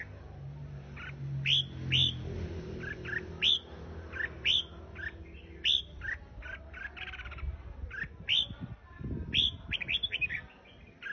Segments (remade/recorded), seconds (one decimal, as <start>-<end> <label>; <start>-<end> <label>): 0.0-11.1 recorded